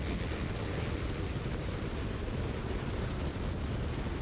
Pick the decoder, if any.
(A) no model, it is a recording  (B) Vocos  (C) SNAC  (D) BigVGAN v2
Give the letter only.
A